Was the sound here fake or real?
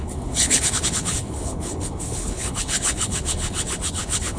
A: fake